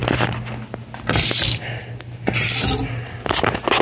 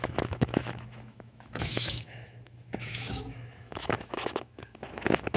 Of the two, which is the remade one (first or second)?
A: second